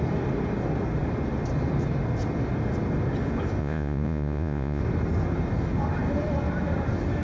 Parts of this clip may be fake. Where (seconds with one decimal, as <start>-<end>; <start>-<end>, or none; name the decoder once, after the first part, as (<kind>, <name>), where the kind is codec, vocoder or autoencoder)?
3.6-4.8 (vocoder, Vocos)